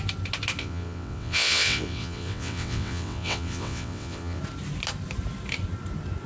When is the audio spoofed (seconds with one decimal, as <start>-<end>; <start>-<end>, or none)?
0.6-4.4